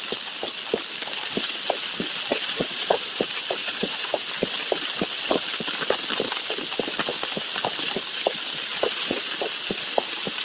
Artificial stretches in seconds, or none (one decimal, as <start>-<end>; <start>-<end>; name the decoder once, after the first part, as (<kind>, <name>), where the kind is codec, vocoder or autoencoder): 2.3-3.2 (vocoder, Vocos); 3.6-4.1; 8.7-9.3